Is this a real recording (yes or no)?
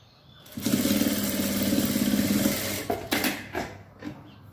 yes